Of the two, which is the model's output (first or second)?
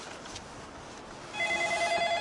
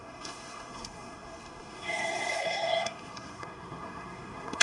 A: second